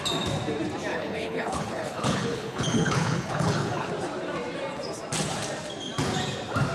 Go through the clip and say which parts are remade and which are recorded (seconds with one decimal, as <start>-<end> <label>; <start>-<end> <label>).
0.0-0.9 recorded; 0.9-3.9 remade; 3.9-6.7 recorded